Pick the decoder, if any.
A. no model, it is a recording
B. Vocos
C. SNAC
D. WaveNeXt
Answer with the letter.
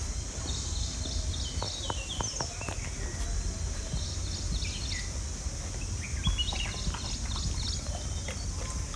A